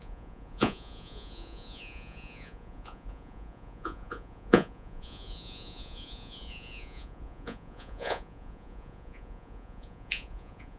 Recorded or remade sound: remade